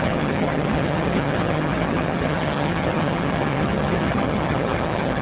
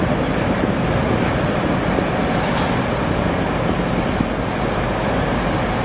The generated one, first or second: first